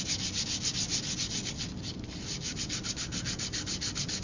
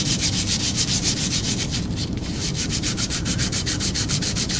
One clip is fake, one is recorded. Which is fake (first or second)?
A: second